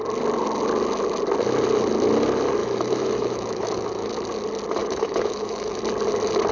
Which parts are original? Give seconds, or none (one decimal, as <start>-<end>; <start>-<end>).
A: 0.0-2.6; 4.1-4.8; 5.8-6.5